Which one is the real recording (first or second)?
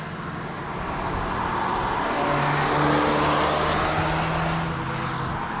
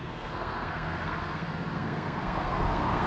first